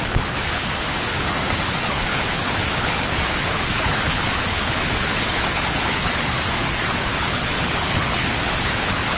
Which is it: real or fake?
fake